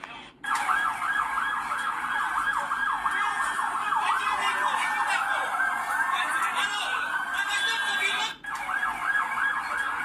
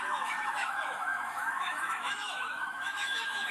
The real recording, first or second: first